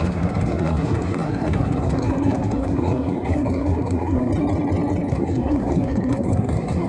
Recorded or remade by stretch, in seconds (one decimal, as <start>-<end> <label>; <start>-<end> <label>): 0.0-4.3 remade; 4.3-5.1 recorded; 5.1-6.9 remade